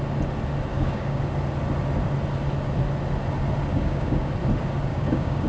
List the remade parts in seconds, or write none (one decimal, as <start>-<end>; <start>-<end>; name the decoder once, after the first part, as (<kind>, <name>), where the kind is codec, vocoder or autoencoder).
0.7-1.2 (codec, DAC); 3.7-4.3; 4.9-5.5

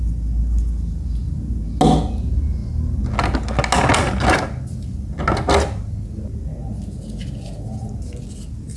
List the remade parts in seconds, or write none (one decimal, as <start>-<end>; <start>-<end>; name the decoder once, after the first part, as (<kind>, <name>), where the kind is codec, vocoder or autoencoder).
none

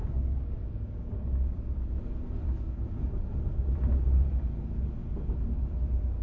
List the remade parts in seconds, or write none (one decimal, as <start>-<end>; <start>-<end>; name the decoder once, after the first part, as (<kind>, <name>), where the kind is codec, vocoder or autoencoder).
0.0-2.0 (codec, DAC)

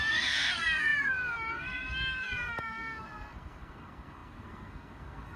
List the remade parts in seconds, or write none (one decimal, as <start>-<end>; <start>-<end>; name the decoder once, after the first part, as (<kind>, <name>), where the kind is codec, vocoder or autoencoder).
0.0-5.4 (codec, SNAC)

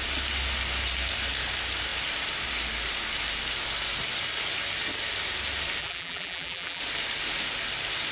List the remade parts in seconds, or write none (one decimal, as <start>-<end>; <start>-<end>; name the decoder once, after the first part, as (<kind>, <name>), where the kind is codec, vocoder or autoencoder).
5.8-6.8 (vocoder, BigVGAN v2)

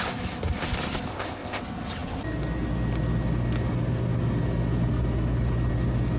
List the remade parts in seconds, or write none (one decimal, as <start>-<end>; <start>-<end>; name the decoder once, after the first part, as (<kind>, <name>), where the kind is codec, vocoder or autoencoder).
1.1-1.6 (codec, ZipCodec)

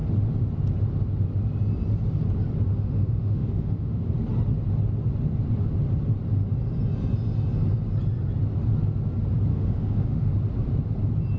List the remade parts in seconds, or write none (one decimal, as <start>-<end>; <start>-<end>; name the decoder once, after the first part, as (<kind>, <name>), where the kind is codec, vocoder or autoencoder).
2.7-4.1 (autoencoder, DAC-VAE); 9.5-10.3

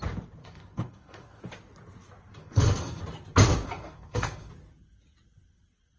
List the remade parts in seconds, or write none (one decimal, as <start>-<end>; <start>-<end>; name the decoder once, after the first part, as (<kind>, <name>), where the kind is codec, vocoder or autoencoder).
0.4-1.4 (codec, SNAC); 2.4-3.0; 3.4-4.5